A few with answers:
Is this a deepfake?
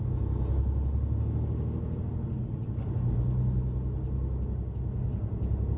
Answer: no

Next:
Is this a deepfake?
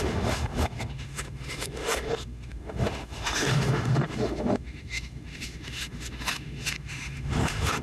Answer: yes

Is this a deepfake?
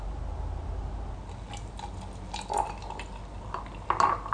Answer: no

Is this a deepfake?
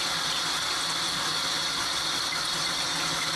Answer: no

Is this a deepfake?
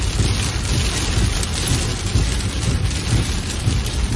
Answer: no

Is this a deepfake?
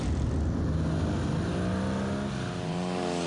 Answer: no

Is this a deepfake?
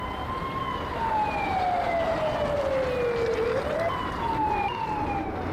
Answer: no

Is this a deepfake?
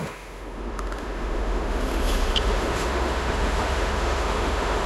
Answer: yes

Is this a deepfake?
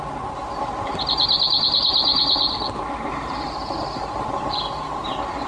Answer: no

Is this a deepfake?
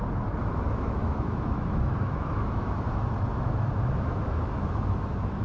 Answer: yes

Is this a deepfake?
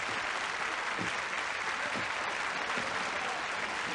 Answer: no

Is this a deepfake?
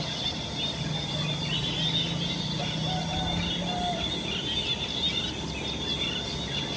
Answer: no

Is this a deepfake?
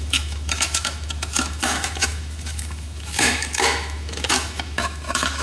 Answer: yes